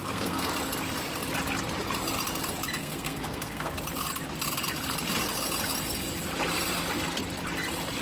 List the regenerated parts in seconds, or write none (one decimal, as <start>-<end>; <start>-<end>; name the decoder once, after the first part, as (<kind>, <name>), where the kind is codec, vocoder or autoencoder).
0.0-0.5 (codec, SNAC); 2.8-3.7